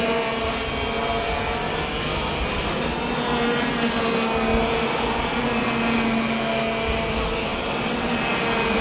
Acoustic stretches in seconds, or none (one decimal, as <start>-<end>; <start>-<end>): 0.0-7.5; 8.2-8.8